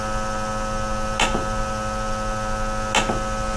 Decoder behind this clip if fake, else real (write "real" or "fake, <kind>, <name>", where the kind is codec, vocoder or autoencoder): real